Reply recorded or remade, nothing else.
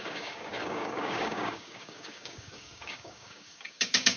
remade